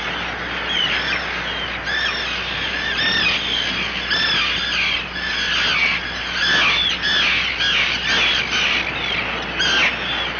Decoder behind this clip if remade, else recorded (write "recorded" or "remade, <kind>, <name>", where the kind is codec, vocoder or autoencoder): recorded